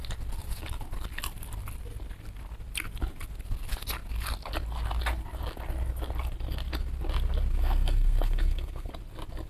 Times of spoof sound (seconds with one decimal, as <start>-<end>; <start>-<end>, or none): 7.5-8.9